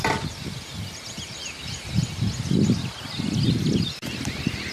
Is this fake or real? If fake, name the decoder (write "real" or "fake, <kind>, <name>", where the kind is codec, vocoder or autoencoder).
fake, vocoder, BigVGAN v2